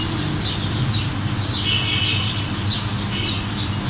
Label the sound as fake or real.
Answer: real